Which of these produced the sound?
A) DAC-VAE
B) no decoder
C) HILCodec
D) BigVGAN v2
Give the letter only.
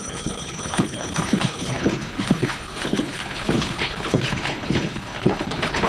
C